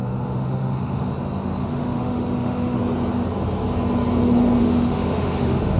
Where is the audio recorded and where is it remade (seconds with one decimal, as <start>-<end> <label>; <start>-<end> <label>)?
0.0-1.1 remade; 1.1-1.6 recorded; 1.6-2.8 remade; 2.8-4.6 recorded; 4.6-5.8 remade